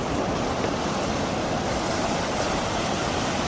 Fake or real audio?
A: real